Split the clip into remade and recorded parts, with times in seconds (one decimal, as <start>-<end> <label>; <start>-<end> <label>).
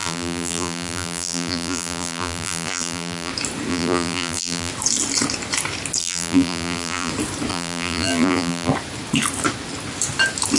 0.0-3.3 remade; 3.3-3.7 recorded; 3.7-4.7 remade; 4.7-6.0 recorded; 6.0-7.1 remade; 7.1-7.5 recorded; 7.5-8.7 remade; 8.7-10.6 recorded